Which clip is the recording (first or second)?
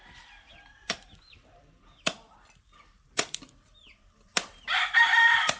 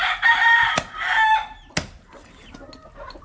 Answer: second